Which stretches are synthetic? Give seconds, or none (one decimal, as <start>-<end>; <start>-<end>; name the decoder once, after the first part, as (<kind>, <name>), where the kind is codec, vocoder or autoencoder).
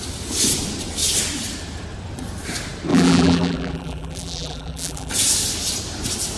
2.9-5.1 (vocoder, BigVGAN v2)